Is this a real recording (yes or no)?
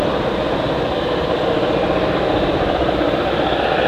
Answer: yes